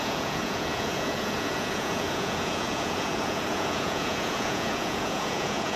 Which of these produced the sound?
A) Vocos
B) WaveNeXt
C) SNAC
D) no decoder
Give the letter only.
A